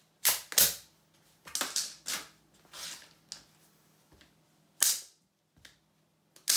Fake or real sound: real